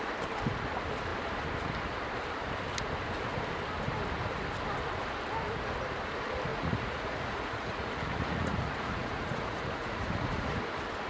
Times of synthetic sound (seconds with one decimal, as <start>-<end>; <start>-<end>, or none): 6.5-10.6